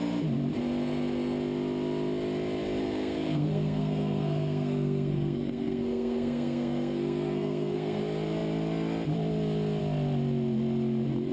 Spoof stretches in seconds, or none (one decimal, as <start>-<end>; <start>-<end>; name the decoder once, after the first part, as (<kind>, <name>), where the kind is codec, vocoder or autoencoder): 2.8-8.0 (codec, SNAC)

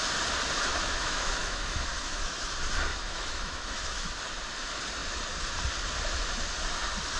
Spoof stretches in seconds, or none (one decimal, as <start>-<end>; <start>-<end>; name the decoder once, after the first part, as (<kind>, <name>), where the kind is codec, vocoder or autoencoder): 0.7-2.5 (autoencoder, DAC-VAE); 2.9-4.2

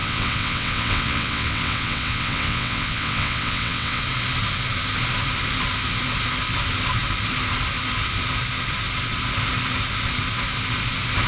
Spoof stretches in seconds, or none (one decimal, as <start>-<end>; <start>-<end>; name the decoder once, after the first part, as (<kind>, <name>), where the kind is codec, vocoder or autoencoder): 0.0-4.0 (vocoder, WaveNeXt)

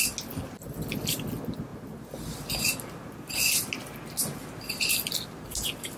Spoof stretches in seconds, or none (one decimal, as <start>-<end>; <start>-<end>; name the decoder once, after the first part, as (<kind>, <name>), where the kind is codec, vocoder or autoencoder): none

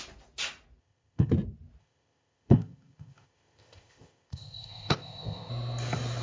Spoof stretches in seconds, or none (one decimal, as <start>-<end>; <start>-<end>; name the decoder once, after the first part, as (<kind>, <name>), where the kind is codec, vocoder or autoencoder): 0.8-1.3 (codec, ZipCodec); 1.8-5.5